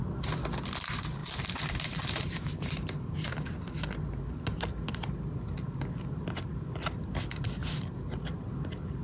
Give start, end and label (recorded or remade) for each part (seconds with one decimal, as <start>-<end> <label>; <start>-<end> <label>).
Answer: 0.0-1.2 recorded; 1.2-3.7 remade; 3.7-7.6 recorded; 7.6-8.4 remade; 8.4-9.0 recorded